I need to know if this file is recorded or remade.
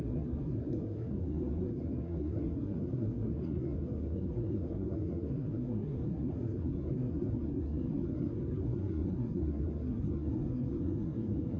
remade